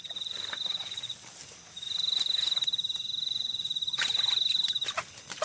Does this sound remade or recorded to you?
recorded